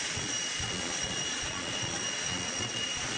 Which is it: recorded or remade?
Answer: remade